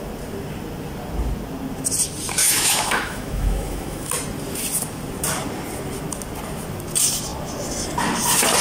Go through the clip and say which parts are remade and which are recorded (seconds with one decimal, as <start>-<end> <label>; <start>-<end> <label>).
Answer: 0.0-2.4 recorded; 2.4-4.1 remade; 4.1-8.6 recorded